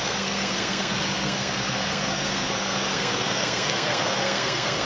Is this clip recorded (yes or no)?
no